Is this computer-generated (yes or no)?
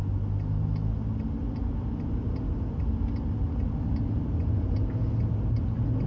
no